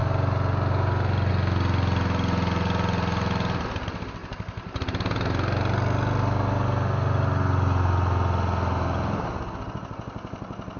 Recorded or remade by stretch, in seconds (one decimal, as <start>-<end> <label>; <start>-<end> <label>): 0.0-4.2 recorded; 4.2-4.8 remade; 4.8-10.8 recorded